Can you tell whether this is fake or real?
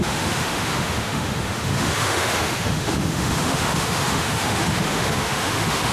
fake